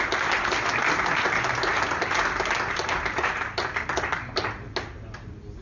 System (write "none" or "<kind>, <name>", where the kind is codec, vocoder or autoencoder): none